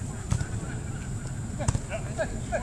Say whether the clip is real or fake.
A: real